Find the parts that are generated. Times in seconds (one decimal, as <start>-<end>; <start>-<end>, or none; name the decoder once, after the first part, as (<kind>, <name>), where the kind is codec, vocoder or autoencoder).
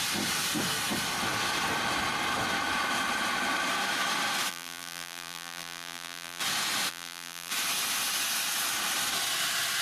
4.5-6.4 (vocoder, BigVGAN v2); 6.9-7.5